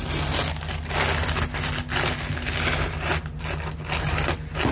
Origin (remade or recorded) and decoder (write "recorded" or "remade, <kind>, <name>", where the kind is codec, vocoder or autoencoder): recorded